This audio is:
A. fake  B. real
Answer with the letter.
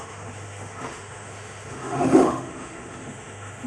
A